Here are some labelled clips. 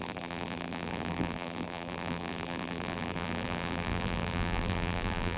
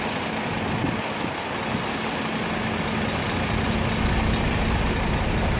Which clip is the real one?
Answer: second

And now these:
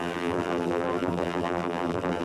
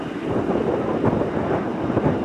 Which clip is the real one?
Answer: second